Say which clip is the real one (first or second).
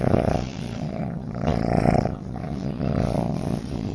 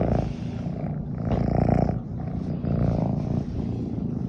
second